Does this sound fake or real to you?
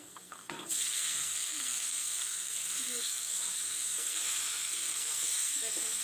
fake